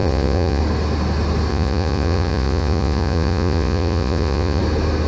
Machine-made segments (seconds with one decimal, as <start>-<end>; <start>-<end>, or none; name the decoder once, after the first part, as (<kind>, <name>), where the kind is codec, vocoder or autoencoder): 0.0-0.6 (vocoder, Vocos); 1.5-4.6